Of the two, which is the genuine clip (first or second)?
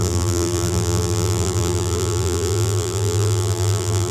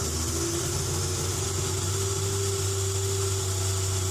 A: second